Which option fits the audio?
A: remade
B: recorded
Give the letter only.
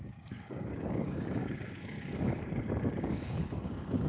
A